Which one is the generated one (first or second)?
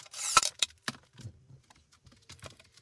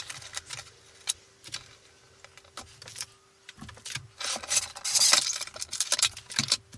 first